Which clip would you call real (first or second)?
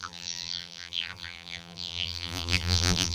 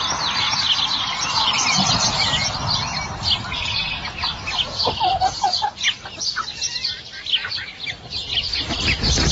second